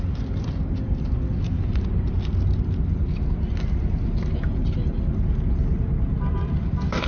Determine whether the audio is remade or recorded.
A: recorded